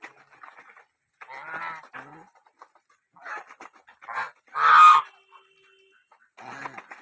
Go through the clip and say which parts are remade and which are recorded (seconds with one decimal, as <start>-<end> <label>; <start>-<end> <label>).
0.0-7.0 recorded

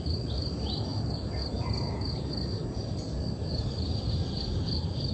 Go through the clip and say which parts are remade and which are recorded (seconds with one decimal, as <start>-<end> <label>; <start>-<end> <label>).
0.0-5.1 recorded